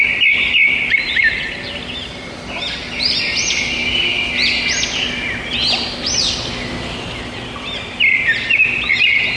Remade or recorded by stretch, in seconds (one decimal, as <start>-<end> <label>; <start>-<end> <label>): 0.0-9.4 recorded